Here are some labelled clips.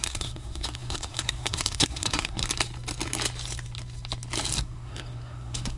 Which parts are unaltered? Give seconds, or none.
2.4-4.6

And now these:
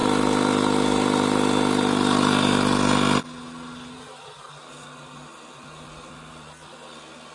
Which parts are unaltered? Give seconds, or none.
0.0-7.3

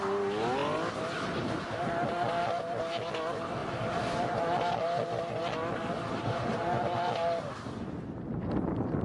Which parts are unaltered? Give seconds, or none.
0.0-9.0

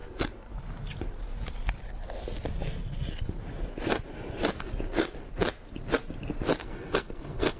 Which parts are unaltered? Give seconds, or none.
0.0-6.6